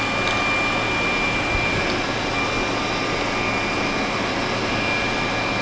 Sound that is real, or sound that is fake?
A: real